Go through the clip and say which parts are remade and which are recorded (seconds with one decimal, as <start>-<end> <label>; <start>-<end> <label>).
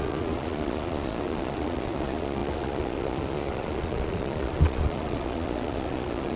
0.0-6.4 remade